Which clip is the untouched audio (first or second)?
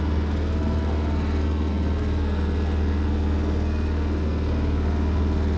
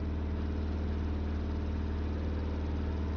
second